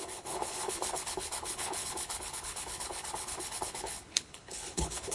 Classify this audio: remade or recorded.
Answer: remade